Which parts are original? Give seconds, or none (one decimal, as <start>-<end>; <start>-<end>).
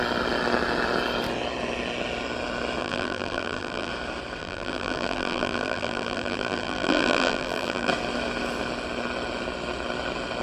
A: 0.0-2.8; 3.9-4.4; 7.9-10.4